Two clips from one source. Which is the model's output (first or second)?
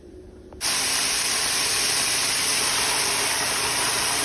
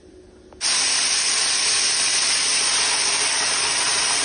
first